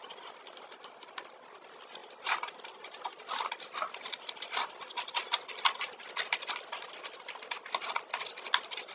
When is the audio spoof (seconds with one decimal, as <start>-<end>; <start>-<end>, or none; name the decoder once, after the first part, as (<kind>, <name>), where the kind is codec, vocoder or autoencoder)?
none